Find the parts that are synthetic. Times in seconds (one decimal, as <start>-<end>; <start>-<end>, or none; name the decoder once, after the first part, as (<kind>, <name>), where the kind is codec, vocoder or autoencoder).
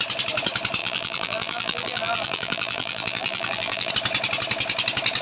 0.8-3.9 (vocoder, BigVGAN v2)